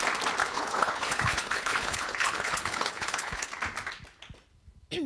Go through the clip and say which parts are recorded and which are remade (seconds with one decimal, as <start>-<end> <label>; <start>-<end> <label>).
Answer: 0.0-0.4 recorded; 0.4-3.5 remade; 3.5-5.1 recorded